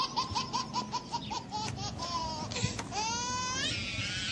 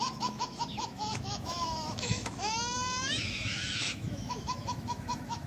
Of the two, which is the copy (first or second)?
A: second